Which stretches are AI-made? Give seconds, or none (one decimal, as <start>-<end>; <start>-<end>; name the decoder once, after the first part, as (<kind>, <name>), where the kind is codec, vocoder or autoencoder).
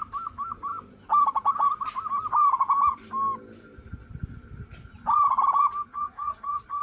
5.9-6.8 (vocoder, Vocos)